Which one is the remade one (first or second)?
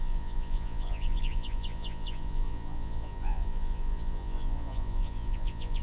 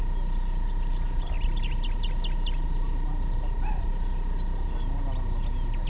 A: first